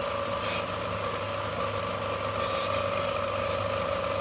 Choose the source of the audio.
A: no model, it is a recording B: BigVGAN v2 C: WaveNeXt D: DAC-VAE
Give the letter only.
A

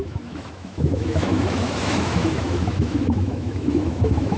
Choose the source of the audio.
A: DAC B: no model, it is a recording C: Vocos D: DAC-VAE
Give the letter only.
D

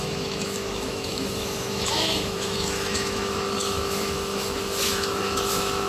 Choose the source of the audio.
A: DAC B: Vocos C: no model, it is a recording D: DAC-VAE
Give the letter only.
D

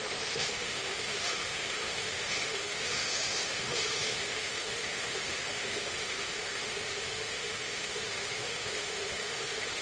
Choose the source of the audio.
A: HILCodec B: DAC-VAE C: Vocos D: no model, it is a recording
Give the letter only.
B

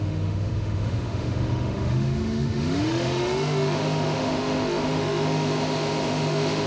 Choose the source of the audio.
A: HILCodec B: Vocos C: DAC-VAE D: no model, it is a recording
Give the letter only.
C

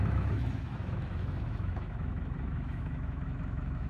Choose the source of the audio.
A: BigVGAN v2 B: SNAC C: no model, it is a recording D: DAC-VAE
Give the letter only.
D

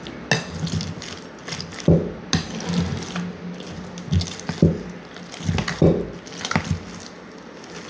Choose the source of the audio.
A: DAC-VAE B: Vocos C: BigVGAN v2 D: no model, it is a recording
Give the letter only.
D